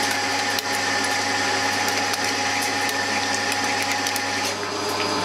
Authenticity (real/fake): real